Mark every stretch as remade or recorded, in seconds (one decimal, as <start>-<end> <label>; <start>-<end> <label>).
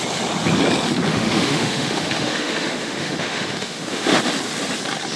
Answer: 0.0-1.1 recorded; 1.1-4.2 remade; 4.2-5.2 recorded